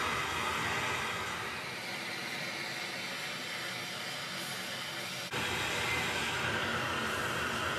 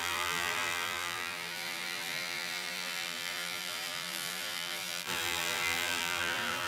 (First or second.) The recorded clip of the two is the first